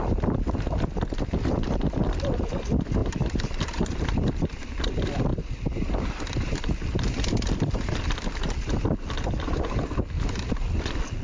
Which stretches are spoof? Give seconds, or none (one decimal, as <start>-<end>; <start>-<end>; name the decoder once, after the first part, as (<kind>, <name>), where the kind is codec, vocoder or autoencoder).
none

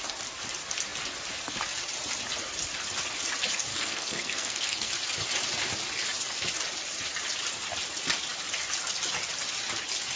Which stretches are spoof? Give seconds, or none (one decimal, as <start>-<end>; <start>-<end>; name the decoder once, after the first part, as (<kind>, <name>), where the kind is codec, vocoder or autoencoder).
3.7-4.9 (codec, SNAC)

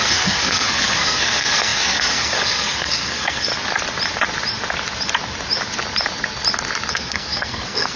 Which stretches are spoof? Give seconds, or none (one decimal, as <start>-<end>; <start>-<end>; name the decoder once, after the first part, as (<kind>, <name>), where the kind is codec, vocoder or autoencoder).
0.0-3.5 (codec, SNAC); 6.9-8.0

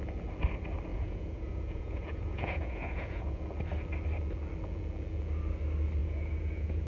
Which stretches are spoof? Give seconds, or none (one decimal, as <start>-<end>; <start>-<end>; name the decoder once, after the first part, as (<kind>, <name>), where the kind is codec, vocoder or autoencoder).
0.9-3.4 (vocoder, Vocos); 6.0-6.9